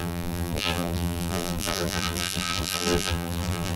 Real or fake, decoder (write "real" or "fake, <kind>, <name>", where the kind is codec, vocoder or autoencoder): fake, vocoder, BigVGAN v2